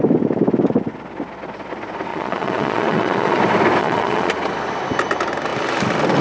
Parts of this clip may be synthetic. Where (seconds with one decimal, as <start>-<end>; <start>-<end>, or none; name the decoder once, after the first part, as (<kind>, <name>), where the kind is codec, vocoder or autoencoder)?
2.1-3.4 (vocoder, Vocos); 3.8-4.3